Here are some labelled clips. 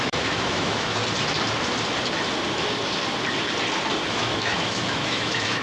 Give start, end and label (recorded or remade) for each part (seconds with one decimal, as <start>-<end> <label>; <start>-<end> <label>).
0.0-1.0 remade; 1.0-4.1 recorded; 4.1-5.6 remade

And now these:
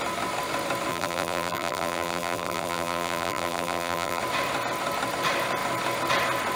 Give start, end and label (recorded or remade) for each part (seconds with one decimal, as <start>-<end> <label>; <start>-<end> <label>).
0.0-0.9 recorded; 0.9-4.2 remade; 4.2-6.6 recorded

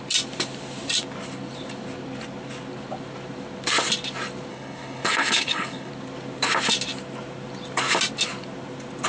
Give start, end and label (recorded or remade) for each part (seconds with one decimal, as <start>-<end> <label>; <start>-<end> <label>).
0.0-4.5 recorded; 4.5-5.9 remade; 5.9-9.1 recorded

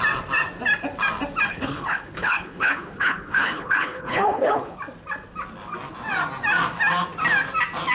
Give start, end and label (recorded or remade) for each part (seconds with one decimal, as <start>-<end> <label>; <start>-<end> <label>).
0.0-1.5 recorded; 1.5-4.8 remade; 4.8-7.9 recorded

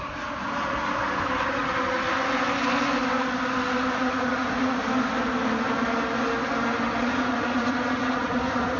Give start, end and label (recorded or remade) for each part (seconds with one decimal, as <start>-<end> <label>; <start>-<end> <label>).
0.0-1.0 remade; 1.0-3.9 recorded; 3.9-4.8 remade; 4.8-7.0 recorded; 7.0-8.8 remade